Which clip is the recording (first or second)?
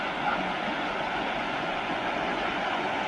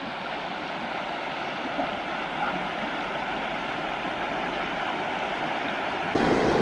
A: second